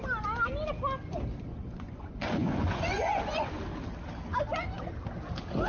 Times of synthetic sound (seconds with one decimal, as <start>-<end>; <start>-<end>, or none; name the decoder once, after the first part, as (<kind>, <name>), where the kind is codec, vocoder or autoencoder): 1.5-3.5 (vocoder, Vocos)